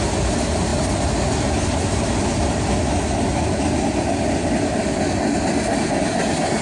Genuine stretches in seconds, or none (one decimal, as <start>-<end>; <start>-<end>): 0.0-6.6